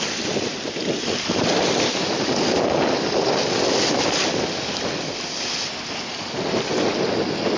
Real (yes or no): yes